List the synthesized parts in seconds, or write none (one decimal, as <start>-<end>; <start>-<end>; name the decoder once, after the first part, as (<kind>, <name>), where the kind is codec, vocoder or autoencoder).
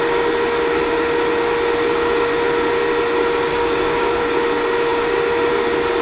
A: 3.5-4.2 (codec, DAC)